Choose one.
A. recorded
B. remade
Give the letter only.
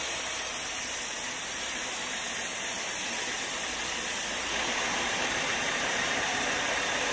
B